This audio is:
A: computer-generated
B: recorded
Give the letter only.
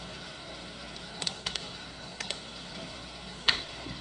A